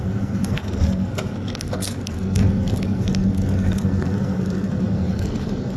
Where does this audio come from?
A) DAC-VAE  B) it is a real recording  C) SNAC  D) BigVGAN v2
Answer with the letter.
C